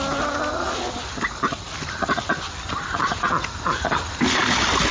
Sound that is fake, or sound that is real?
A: real